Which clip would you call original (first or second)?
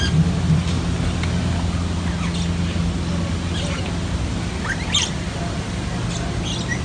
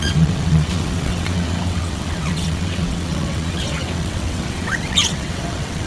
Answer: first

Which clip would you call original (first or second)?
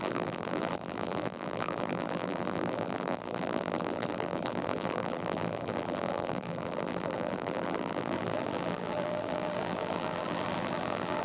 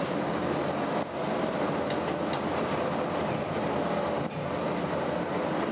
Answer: second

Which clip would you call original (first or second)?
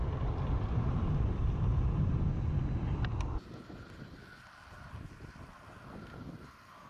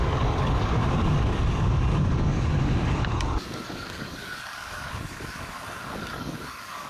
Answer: first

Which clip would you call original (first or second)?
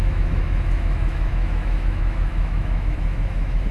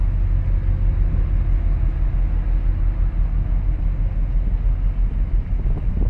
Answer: second